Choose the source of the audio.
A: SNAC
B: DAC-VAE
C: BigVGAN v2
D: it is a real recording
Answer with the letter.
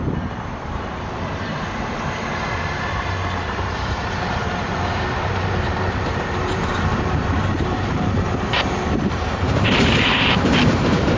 C